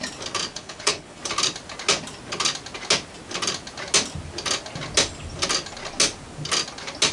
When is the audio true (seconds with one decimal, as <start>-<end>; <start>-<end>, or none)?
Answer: 0.0-0.5; 1.2-7.1